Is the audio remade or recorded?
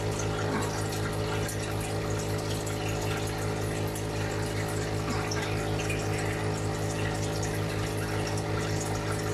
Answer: recorded